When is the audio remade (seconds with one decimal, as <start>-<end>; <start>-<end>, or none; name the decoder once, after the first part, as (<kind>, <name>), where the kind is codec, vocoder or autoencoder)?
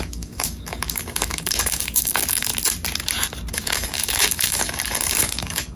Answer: 0.0-2.5 (codec, DAC); 3.5-5.8